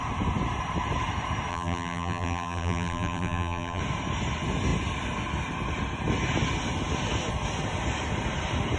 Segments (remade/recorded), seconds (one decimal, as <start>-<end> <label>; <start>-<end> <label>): 0.0-1.5 recorded; 1.5-3.8 remade; 3.8-8.8 recorded